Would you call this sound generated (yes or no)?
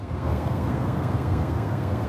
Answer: yes